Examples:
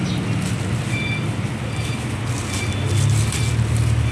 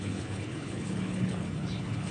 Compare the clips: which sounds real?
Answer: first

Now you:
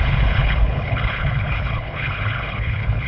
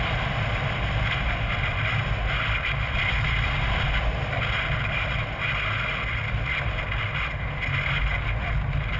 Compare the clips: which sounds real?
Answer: second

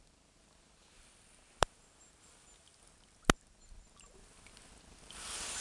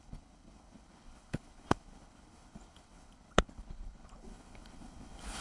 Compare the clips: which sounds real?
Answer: first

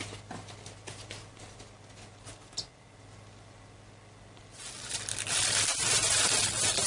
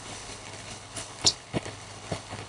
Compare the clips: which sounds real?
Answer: first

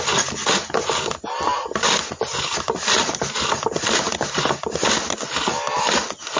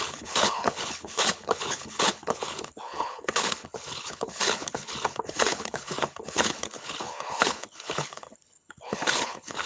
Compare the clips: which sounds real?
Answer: first